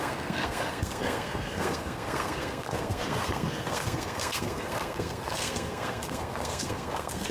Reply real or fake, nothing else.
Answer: fake